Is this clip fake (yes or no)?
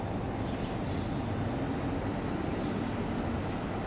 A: no